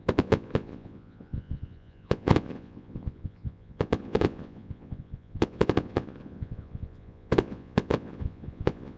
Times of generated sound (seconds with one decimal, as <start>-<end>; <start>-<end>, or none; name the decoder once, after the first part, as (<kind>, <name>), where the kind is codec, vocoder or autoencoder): 0.0-9.0 (vocoder, Vocos)